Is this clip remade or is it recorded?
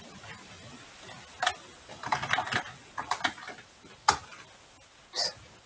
recorded